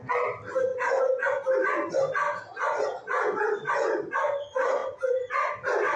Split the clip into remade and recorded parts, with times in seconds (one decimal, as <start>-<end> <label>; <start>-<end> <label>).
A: 0.0-6.0 recorded